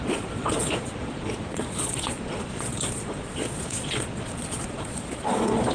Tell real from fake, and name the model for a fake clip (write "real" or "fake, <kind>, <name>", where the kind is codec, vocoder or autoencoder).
fake, vocoder, Vocos